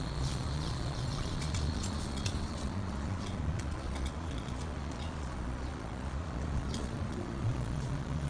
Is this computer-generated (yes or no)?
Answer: yes